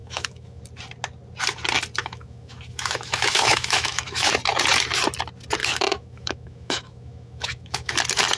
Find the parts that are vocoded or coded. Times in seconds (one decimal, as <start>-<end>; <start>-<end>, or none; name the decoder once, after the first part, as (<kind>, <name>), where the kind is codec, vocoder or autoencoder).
0.0-0.6 (autoencoder, DAC-VAE); 2.0-4.3; 5.6-7.9